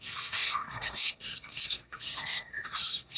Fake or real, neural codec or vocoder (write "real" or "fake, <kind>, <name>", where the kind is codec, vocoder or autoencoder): fake, codec, SNAC